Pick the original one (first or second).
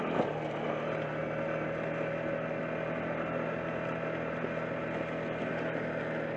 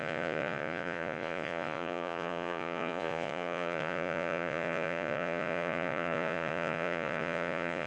first